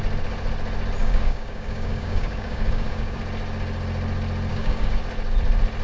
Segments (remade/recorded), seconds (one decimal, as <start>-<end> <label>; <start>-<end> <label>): 0.0-1.0 recorded; 1.0-3.2 remade; 3.2-4.5 recorded; 4.5-5.0 remade; 5.0-5.8 recorded